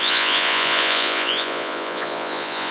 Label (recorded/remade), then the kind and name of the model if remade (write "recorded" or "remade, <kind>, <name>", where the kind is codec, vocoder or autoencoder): remade, vocoder, Vocos